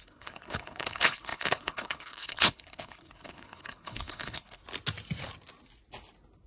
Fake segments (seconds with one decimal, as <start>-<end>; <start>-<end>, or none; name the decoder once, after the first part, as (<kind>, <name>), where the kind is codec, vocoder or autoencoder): 0.0-4.6 (codec, HILCodec)